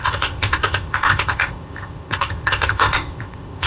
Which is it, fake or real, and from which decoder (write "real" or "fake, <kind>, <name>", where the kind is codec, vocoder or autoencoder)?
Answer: fake, codec, ZipCodec